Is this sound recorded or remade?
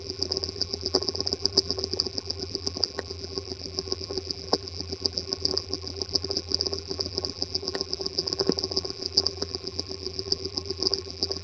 remade